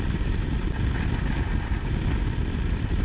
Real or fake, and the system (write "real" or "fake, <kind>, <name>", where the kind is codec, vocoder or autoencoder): real